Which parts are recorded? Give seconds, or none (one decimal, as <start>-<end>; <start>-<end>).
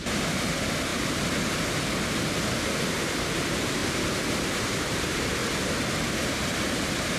0.9-2.5; 3.8-4.6; 5.4-6.5